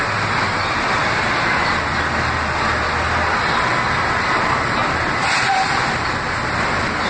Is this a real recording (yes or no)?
yes